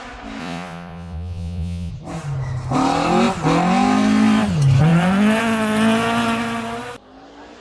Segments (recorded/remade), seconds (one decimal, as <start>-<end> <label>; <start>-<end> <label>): 0.0-0.4 recorded; 0.4-1.9 remade; 1.9-7.6 recorded